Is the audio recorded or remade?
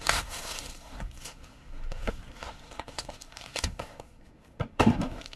remade